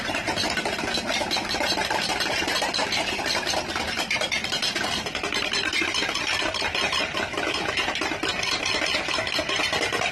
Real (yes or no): no